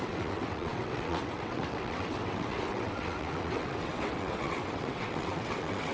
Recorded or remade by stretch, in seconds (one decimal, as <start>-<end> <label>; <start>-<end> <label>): 0.0-5.9 remade